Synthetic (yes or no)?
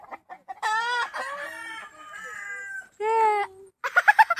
no